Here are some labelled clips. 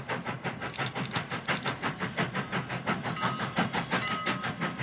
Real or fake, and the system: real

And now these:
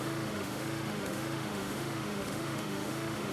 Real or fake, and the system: fake, autoencoder, DAC-VAE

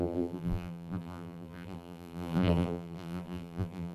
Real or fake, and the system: fake, vocoder, BigVGAN v2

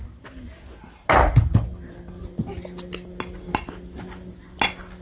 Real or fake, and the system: real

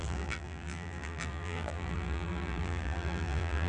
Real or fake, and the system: fake, vocoder, BigVGAN v2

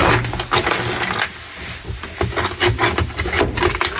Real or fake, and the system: real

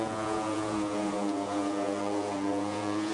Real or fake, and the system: fake, vocoder, Vocos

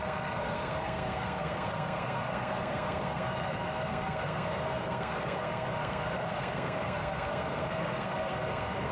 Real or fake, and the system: fake, codec, SNAC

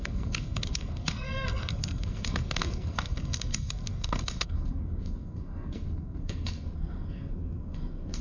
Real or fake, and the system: fake, codec, SNAC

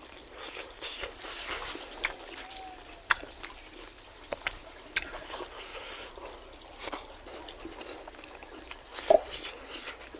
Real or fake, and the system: real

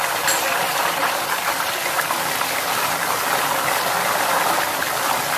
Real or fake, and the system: real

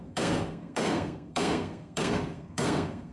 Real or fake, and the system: fake, codec, SNAC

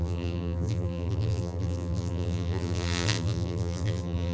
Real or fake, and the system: fake, vocoder, BigVGAN v2